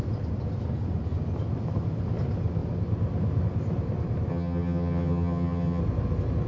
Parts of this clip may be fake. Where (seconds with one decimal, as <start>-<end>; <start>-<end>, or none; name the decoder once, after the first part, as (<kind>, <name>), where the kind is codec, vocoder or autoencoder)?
4.3-5.8 (vocoder, HiFi-GAN)